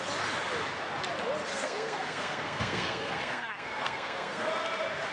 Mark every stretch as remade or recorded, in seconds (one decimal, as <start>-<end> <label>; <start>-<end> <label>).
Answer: 0.0-1.5 recorded; 1.5-4.5 remade; 4.5-5.1 recorded